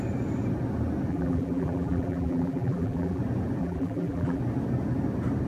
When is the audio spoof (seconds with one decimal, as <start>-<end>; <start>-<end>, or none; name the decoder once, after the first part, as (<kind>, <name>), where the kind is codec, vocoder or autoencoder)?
1.1-3.2 (vocoder, BigVGAN v2); 3.6-4.4